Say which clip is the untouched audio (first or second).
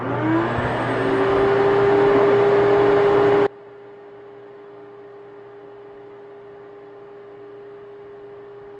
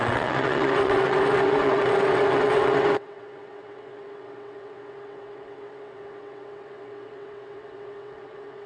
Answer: first